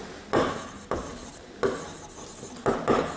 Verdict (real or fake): real